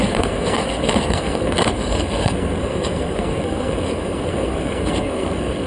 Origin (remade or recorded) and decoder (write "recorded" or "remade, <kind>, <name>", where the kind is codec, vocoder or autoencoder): remade, codec, SNAC